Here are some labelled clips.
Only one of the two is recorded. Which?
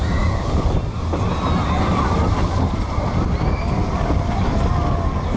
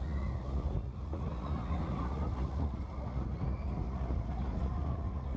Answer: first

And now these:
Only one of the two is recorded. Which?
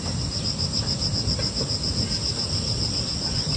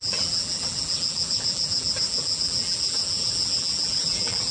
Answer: first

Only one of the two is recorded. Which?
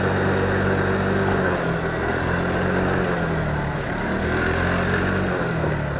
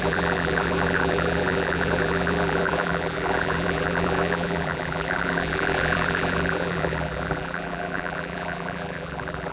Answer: first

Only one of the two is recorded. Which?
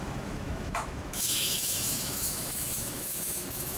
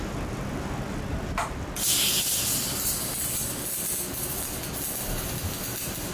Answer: second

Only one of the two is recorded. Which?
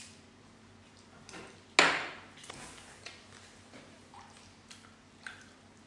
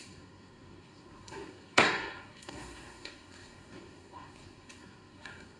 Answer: first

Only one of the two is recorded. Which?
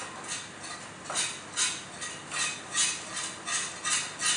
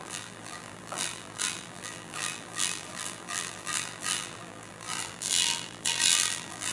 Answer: first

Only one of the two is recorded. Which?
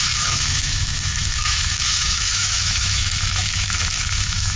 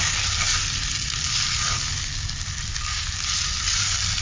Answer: second